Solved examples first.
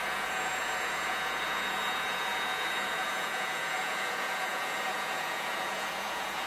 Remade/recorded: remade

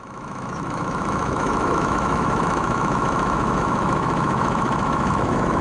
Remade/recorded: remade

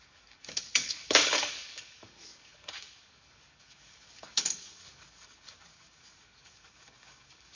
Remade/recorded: remade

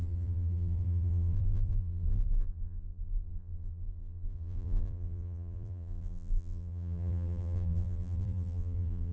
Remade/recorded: remade